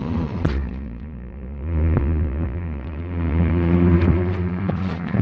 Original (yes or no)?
no